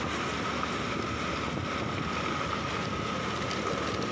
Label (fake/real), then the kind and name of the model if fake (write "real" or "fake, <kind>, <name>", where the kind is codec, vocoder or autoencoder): real